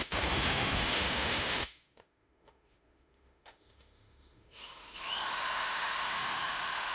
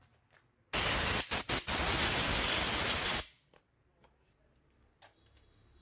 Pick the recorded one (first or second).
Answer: second